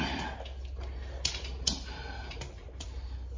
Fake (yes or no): no